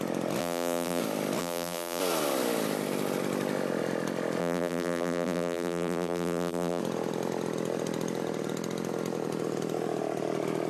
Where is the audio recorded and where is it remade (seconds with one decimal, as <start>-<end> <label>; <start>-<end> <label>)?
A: 0.0-0.4 recorded; 0.4-1.0 remade; 1.0-1.4 recorded; 1.4-2.0 remade; 2.0-4.4 recorded; 4.4-6.8 remade; 6.8-10.7 recorded